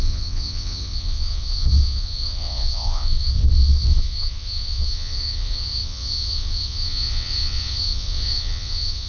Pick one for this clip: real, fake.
fake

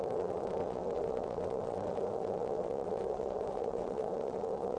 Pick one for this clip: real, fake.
fake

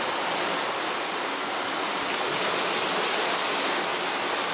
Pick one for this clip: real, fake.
real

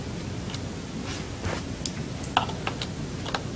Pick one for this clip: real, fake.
real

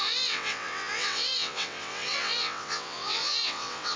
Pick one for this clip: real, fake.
fake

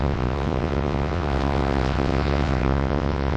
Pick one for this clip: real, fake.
fake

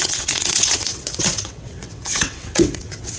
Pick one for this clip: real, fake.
fake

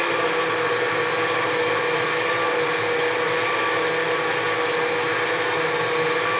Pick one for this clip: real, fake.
real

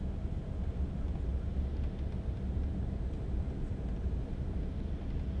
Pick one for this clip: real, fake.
real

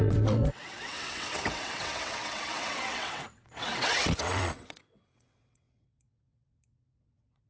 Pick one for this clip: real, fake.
fake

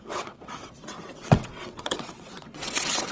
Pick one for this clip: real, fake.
fake